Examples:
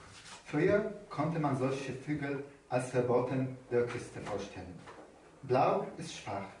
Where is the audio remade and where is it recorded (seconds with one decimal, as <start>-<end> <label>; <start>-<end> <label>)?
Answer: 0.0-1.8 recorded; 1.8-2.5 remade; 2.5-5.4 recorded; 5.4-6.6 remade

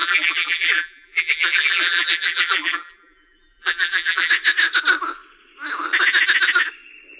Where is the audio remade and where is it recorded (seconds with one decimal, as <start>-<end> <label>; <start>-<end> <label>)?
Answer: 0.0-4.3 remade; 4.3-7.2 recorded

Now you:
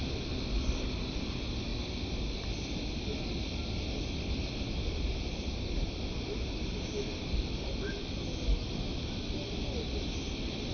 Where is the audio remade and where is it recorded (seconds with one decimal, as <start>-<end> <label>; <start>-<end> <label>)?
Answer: 0.0-10.7 recorded